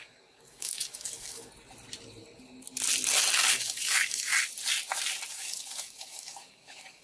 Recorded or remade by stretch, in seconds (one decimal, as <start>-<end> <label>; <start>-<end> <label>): 0.0-1.5 remade; 1.5-3.4 recorded; 3.4-4.3 remade; 4.3-5.3 recorded; 5.3-7.0 remade